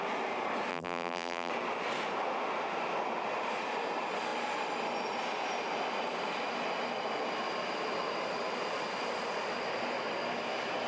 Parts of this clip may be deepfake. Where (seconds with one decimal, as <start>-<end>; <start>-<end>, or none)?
0.7-1.5